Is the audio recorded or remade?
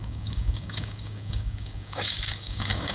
remade